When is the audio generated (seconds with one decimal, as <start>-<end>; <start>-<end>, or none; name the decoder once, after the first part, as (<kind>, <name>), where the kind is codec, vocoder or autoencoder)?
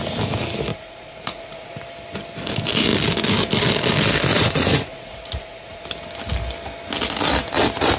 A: 0.7-1.7 (vocoder, Vocos); 4.3-5.8